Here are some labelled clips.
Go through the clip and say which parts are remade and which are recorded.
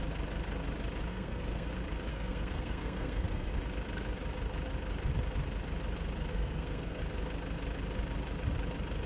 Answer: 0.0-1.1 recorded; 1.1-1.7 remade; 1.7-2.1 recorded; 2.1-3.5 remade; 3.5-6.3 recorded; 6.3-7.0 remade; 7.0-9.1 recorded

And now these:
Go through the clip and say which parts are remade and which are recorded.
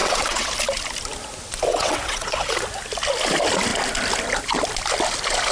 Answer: 0.0-0.5 remade; 0.5-1.7 recorded; 1.7-2.5 remade; 2.5-5.5 recorded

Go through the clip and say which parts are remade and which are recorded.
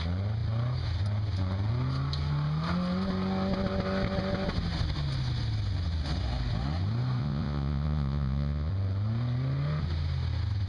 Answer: 0.0-7.2 recorded; 7.2-8.7 remade; 8.7-10.7 recorded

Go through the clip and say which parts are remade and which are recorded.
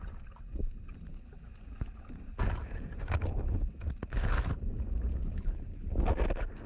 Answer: 0.0-5.1 recorded; 5.1-6.0 remade; 6.0-6.7 recorded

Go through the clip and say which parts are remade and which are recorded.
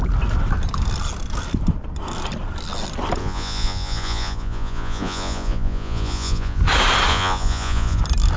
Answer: 0.0-3.2 recorded; 3.2-6.6 remade; 6.6-7.1 recorded; 7.1-8.0 remade; 8.0-8.4 recorded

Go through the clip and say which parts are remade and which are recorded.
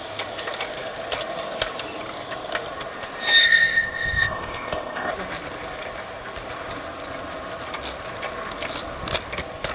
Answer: 0.0-3.4 recorded; 3.4-5.1 remade; 5.1-9.7 recorded